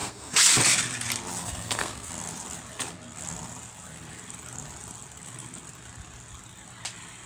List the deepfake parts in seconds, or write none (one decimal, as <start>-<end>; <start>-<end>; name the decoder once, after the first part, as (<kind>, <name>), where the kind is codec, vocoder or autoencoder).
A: 0.0-0.5 (codec, SNAC); 1.4-2.1